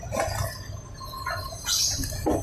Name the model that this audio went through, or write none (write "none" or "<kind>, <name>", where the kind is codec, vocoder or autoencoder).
none